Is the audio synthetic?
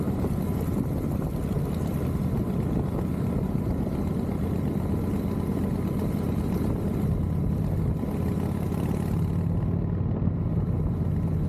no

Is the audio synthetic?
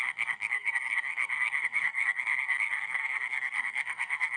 yes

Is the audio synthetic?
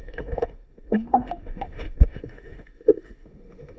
yes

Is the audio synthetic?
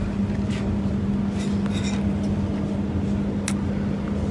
no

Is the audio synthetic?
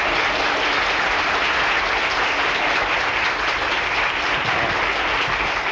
no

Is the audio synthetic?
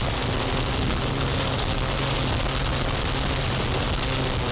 no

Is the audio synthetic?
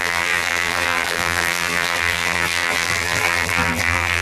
yes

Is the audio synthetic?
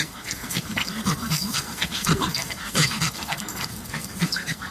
yes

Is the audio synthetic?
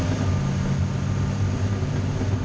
no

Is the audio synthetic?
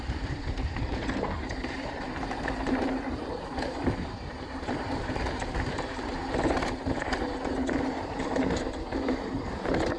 yes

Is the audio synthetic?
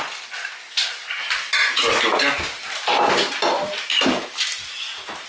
no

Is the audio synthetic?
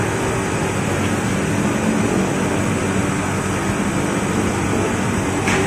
no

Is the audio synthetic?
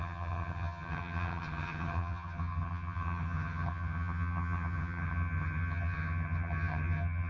yes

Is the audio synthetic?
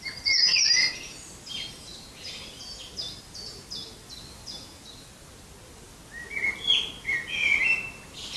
no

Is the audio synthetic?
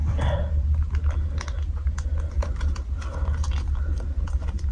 no